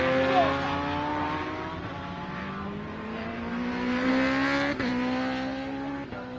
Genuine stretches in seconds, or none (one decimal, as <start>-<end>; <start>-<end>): 0.0-1.1; 4.1-6.4